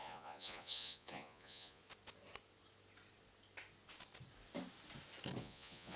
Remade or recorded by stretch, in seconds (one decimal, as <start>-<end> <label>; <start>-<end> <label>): 0.0-1.8 remade; 1.8-5.4 recorded; 5.4-6.0 remade